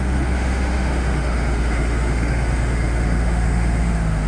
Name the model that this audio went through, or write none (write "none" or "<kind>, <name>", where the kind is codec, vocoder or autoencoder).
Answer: autoencoder, DAC-VAE